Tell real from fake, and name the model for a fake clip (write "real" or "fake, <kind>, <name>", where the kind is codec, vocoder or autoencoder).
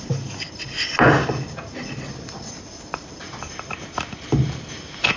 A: real